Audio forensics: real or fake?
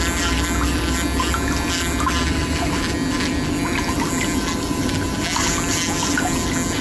real